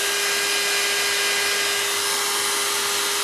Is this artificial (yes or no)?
no